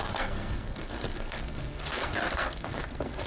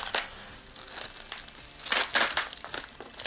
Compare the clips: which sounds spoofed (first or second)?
first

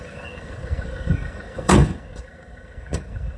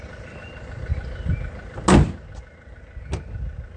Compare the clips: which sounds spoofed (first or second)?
first